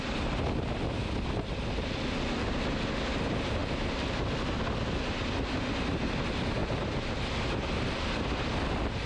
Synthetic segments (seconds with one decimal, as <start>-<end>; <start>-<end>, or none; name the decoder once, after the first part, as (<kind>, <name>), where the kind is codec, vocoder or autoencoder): 6.6-8.2 (vocoder, BigVGAN v2)